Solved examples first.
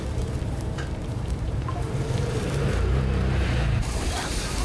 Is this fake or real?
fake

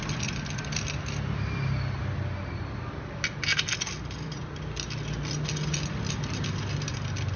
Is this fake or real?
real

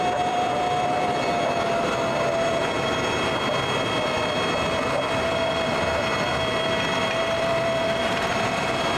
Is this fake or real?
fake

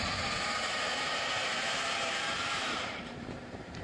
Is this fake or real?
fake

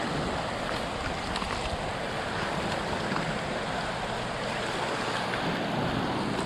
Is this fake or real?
real